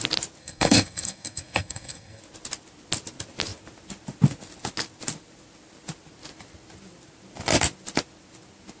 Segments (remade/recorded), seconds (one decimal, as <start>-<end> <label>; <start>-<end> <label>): 0.0-0.4 recorded; 0.4-2.2 remade; 2.2-8.8 recorded